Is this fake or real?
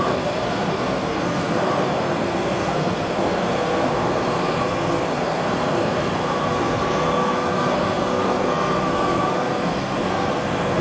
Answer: fake